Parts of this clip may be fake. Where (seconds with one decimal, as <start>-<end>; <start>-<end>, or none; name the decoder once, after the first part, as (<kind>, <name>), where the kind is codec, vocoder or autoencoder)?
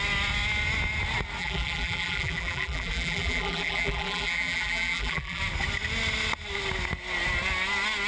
1.4-5.4 (vocoder, BigVGAN v2)